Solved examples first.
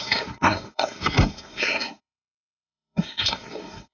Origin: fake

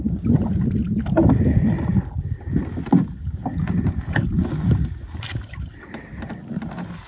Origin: real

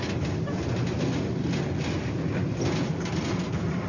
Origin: real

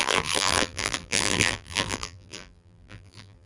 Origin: fake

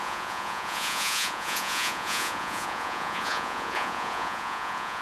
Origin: fake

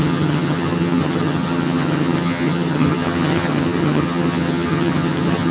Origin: fake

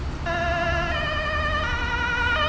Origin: real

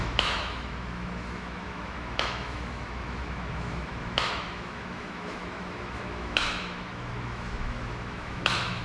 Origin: fake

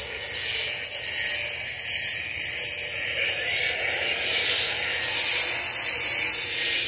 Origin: real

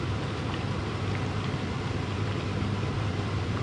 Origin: fake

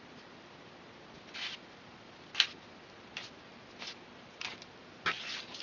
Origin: real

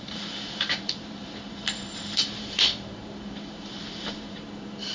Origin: fake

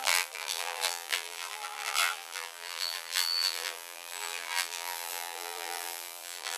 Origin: fake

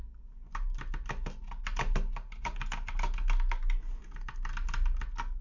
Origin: real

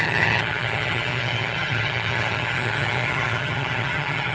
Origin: fake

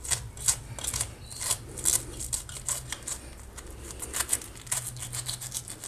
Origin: real